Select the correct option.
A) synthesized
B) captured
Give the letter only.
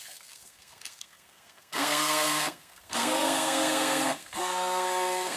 A